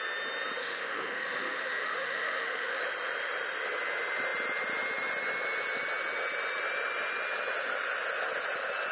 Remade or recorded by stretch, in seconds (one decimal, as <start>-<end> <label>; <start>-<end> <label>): 0.0-0.6 recorded; 0.6-2.8 remade; 2.8-8.9 recorded